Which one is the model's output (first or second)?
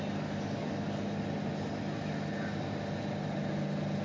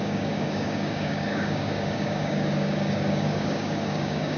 second